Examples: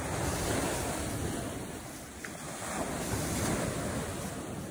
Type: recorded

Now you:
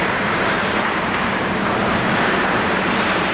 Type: remade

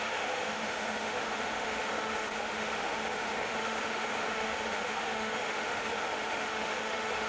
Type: remade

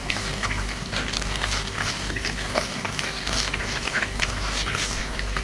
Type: remade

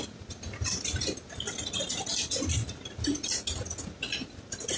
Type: recorded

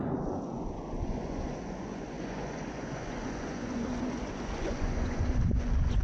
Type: remade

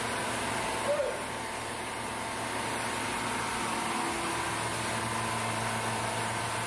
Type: recorded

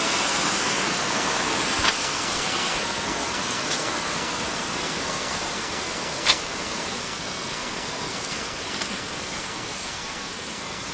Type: remade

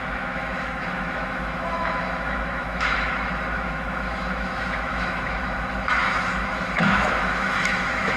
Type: remade